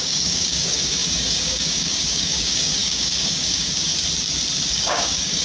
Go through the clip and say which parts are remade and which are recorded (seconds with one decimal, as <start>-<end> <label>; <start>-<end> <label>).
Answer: 0.0-3.9 remade; 3.9-4.7 recorded; 4.7-5.4 remade